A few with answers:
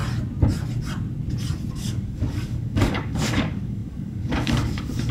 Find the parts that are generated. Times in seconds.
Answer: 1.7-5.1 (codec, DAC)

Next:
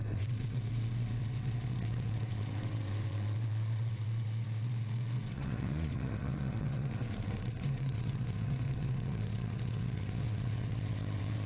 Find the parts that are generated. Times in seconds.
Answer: 0.0-11.5 (vocoder, WaveNeXt)

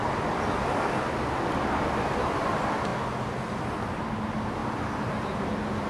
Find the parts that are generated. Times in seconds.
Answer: none

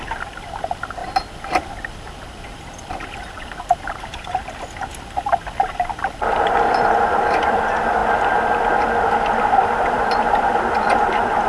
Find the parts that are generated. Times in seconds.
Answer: 0.0-1.0 (vocoder, BigVGAN v2); 1.5-8.0; 9.9-11.5